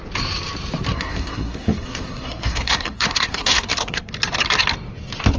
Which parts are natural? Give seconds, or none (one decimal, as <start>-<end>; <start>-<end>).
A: 0.0-0.9; 4.1-5.4